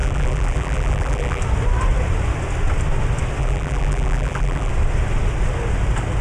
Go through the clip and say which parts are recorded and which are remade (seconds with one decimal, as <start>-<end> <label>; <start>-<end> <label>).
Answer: 0.0-1.4 remade; 1.4-3.4 recorded; 3.4-4.7 remade; 4.7-6.2 recorded